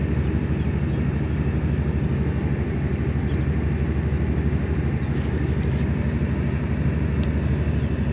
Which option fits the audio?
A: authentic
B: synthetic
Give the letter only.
A